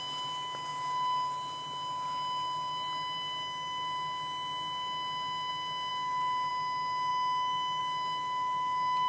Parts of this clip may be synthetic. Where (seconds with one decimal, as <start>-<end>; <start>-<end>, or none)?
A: none